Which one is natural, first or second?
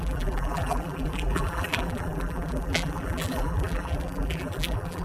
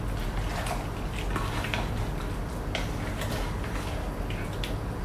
second